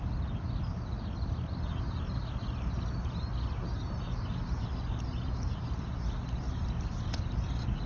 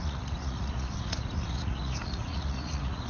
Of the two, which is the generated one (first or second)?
second